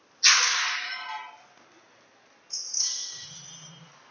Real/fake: real